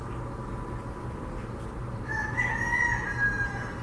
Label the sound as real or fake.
real